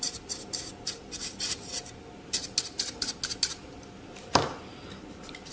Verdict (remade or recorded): recorded